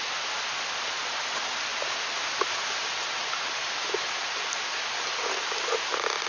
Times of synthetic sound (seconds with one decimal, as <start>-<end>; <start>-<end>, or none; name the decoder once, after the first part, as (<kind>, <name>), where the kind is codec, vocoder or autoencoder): none